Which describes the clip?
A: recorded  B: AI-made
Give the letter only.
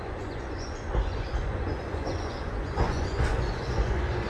B